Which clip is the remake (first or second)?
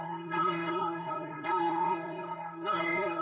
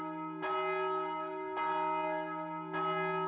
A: first